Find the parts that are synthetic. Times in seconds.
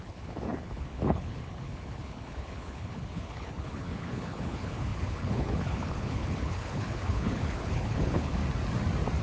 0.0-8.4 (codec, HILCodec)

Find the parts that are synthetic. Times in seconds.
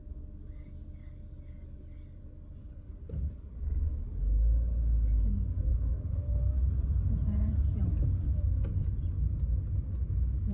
2.6-3.3 (codec, HILCodec); 5.7-6.4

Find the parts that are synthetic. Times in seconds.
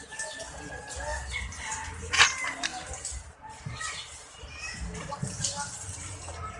none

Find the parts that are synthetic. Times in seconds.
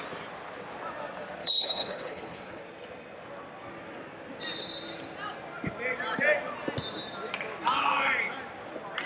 1.4-2.6 (codec, HILCodec)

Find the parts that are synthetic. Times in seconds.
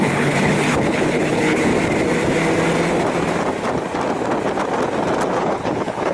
0.0-1.7 (codec, HILCodec); 5.4-6.1